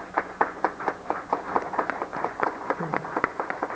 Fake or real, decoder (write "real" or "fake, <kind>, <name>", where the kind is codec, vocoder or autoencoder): fake, vocoder, Vocos